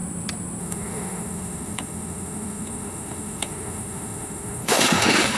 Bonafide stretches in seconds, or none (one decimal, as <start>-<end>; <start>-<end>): 0.0-0.6